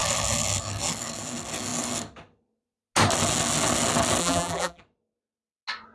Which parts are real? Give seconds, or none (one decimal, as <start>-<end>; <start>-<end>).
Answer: 0.0-4.2; 4.8-5.9